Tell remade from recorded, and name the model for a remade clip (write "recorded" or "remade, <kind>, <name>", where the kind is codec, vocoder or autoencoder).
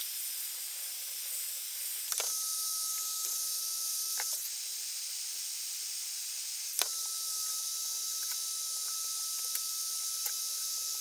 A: recorded